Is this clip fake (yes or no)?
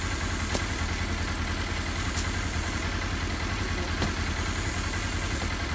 no